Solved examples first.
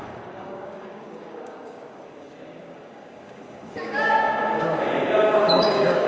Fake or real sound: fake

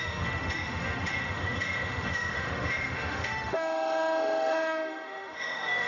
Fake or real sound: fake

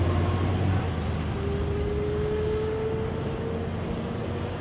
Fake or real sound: real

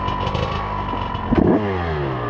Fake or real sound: real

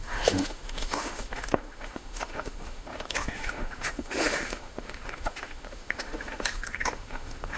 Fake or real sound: fake